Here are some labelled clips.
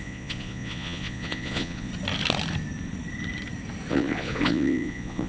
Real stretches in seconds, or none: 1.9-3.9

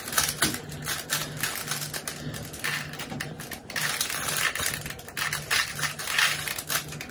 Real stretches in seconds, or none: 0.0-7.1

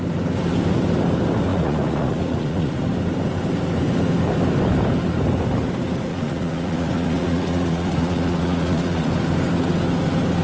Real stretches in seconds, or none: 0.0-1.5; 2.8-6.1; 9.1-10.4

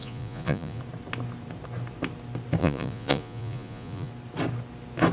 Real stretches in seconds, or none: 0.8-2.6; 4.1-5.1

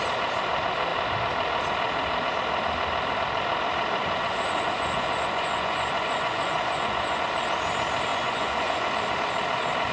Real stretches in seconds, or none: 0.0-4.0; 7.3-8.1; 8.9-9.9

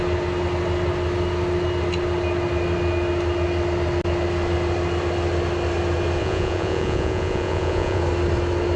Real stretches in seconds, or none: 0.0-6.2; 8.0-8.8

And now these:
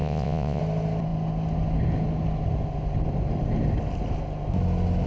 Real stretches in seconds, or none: 0.6-5.1